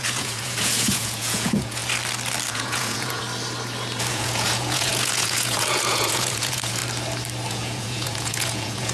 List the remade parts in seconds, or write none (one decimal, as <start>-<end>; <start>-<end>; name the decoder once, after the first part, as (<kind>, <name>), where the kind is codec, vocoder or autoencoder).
0.0-1.8 (vocoder, Vocos); 2.5-3.2; 4.1-6.8; 7.5-8.9